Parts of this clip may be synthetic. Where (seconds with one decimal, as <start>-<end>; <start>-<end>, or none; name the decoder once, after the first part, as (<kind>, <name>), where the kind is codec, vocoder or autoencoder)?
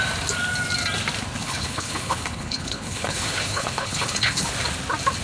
1.4-4.5 (codec, HILCodec)